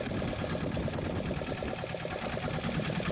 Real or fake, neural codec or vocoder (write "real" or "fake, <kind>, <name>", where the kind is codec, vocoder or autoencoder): real